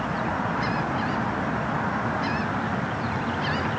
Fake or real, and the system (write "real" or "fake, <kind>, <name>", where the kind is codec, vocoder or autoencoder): real